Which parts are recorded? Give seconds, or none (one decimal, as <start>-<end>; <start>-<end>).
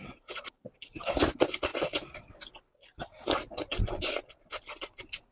0.0-5.3